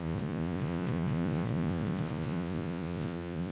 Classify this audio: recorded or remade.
remade